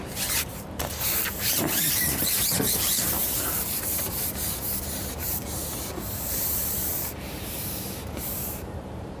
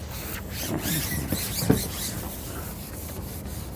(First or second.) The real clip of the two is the second